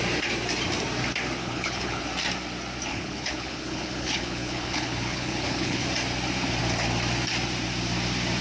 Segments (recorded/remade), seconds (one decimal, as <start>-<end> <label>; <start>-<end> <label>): 0.0-1.4 recorded; 1.4-2.0 remade; 2.0-2.9 recorded; 2.9-5.8 remade; 5.8-8.4 recorded